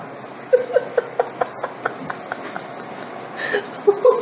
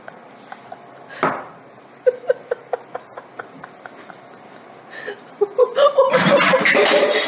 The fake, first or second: second